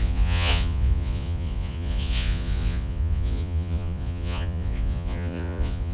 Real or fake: fake